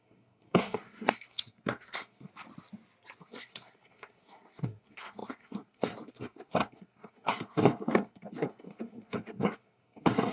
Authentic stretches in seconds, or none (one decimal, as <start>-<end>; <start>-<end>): 2.3-3.2